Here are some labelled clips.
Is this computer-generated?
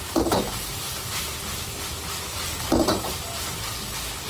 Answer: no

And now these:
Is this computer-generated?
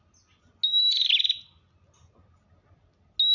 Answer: no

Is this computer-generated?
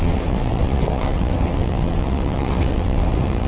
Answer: yes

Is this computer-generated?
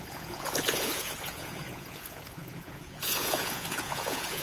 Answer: yes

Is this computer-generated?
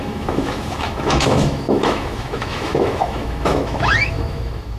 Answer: yes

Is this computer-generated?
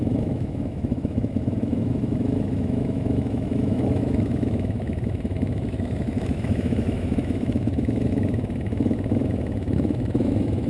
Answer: yes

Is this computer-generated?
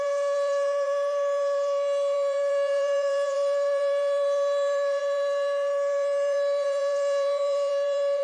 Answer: yes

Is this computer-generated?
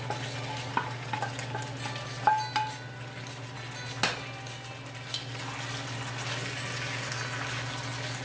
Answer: no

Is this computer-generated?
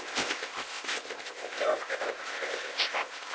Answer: yes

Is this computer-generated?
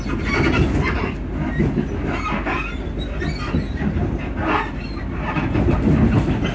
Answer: no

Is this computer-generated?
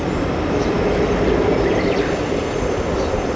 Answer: no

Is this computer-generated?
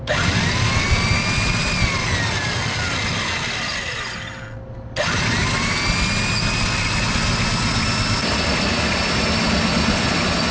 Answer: no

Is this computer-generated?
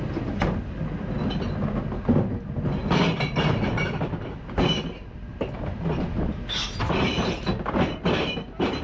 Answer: no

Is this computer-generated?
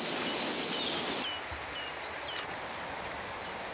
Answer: no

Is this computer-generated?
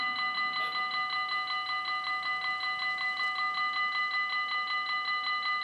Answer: no